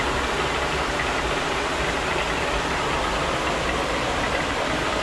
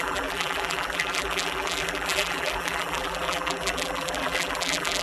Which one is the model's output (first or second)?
second